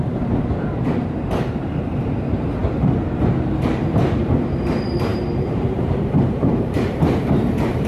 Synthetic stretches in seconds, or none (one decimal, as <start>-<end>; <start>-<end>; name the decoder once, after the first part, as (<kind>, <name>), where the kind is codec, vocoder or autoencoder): 0.0-2.6 (vocoder, BigVGAN v2); 4.0-7.9